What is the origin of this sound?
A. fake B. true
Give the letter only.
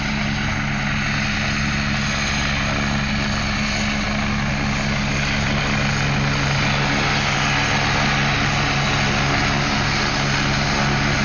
B